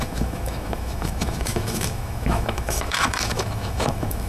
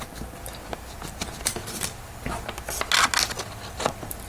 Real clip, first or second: second